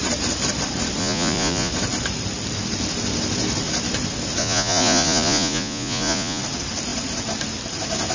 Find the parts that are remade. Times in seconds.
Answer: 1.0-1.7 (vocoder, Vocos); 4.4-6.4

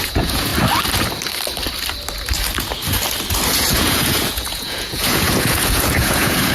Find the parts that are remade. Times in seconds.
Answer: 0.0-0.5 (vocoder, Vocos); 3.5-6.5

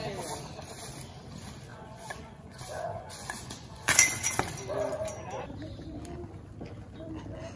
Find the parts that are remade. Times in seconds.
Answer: 1.7-4.4 (vocoder, Vocos)